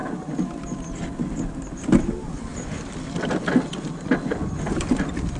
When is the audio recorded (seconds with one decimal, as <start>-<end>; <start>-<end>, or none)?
0.0-5.4